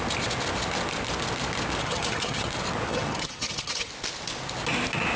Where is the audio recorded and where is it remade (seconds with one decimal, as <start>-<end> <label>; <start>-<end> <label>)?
0.0-1.8 recorded; 1.8-2.5 remade; 2.5-2.9 recorded; 2.9-3.9 remade; 3.9-5.2 recorded